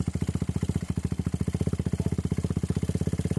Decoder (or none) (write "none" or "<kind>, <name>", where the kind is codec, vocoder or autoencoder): none